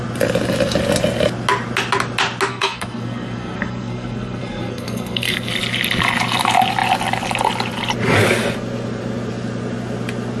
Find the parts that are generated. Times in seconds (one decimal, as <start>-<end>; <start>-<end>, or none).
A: 2.5-5.5

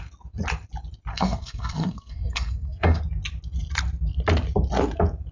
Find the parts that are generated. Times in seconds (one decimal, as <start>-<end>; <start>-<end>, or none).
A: 1.1-3.0

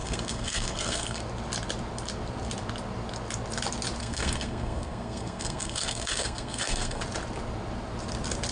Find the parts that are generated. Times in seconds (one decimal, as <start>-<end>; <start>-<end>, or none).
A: 0.0-1.2; 4.0-7.0

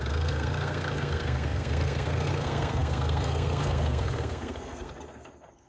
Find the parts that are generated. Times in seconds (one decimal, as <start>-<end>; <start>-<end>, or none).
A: 0.0-5.7